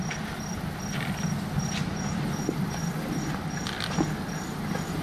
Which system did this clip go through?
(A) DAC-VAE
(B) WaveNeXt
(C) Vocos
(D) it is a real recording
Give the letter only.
D